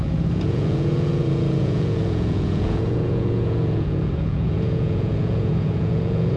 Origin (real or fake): fake